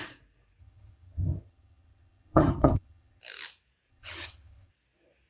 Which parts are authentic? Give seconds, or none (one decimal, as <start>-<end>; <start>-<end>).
0.0-0.6; 3.2-3.9; 4.7-5.3

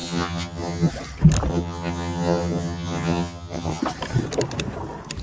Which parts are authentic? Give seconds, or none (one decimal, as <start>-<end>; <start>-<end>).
0.9-1.5; 3.8-5.2

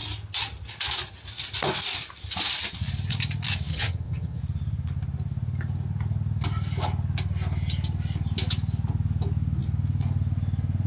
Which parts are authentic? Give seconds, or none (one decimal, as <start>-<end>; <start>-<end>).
0.0-3.7; 4.4-10.9

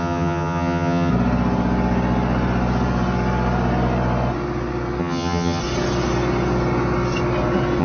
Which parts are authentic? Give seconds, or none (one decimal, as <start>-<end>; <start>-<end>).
1.1-5.0; 5.6-7.8

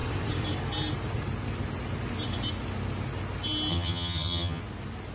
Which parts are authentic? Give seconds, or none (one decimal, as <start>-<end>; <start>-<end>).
0.0-3.7; 4.6-5.1

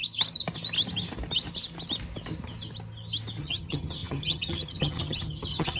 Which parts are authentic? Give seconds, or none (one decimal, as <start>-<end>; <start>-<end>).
0.0-3.4